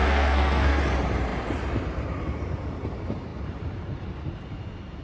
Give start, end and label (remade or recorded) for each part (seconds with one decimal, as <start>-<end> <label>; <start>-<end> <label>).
0.0-0.8 remade; 0.8-5.0 recorded